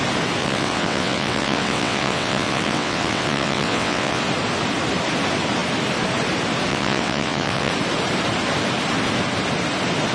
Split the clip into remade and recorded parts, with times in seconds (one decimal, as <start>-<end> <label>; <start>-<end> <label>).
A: 0.0-0.4 recorded; 0.4-4.2 remade; 4.2-6.7 recorded; 6.7-7.7 remade; 7.7-10.1 recorded